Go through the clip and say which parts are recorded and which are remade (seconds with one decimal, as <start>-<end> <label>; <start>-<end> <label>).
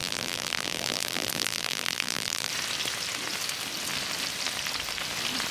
0.0-2.5 remade; 2.5-5.5 recorded